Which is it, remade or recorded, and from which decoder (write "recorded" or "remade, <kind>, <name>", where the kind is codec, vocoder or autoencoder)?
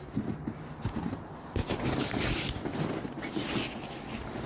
recorded